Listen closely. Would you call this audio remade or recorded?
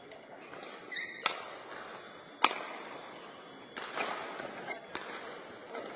recorded